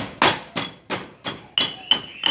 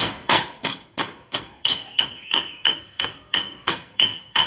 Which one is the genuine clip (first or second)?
first